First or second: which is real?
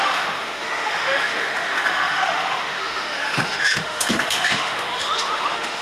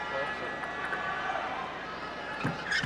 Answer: second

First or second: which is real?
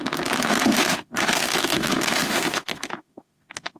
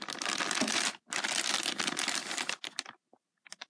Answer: second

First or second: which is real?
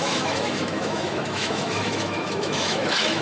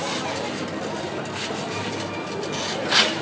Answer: second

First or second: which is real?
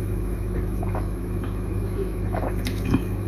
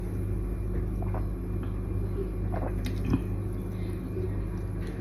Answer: second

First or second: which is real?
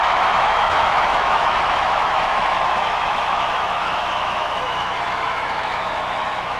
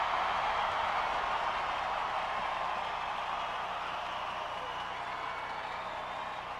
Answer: second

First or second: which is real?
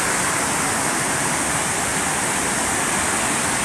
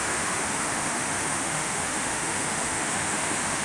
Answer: first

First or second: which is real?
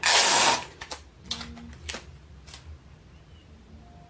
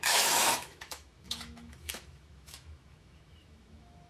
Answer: first